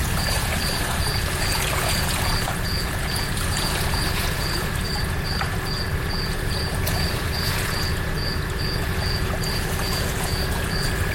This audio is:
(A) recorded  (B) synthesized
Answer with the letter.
B